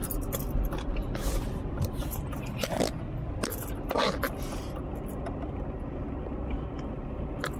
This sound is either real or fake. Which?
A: real